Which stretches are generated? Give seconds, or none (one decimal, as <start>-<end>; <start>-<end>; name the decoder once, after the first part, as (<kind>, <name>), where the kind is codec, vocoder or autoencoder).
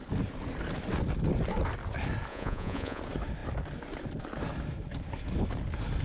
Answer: 2.3-3.0 (vocoder, Vocos)